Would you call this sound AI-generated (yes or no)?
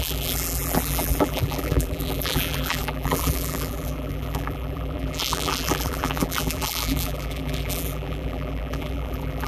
yes